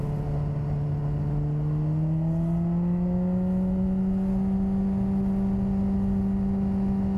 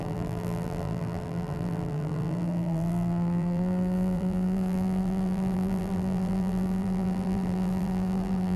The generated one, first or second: second